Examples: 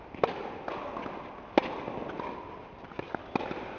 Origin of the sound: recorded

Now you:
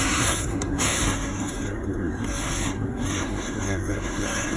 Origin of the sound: remade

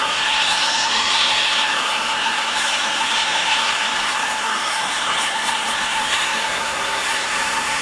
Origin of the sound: remade